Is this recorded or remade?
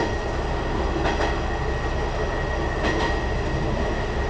recorded